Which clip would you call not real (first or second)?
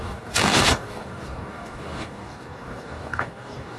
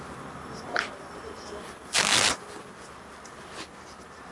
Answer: first